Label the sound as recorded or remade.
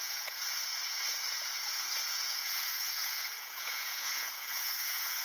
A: remade